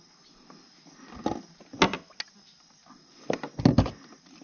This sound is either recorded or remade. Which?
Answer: recorded